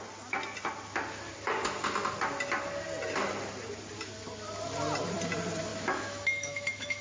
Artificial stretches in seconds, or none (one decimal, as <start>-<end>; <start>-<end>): 5.7-7.0